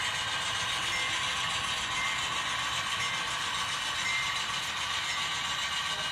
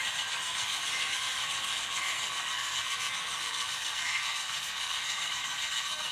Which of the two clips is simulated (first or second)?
second